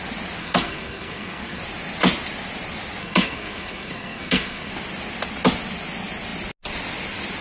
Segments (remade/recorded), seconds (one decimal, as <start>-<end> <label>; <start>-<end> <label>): 0.0-0.4 recorded; 0.4-1.6 remade; 1.6-3.0 recorded; 3.0-4.7 remade; 4.7-7.4 recorded